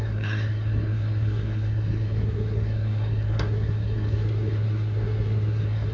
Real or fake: fake